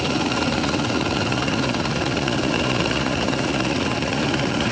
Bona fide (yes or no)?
no